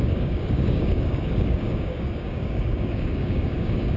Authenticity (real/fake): fake